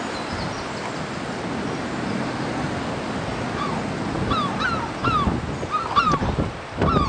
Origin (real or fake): real